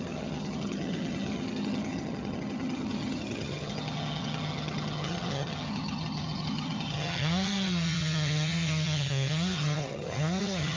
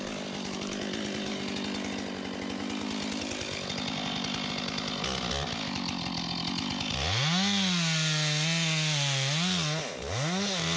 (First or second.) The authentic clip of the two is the second